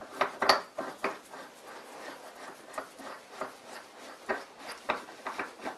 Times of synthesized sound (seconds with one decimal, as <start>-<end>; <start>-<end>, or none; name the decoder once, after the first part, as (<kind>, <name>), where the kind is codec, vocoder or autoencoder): 2.8-5.8 (vocoder, BigVGAN v2)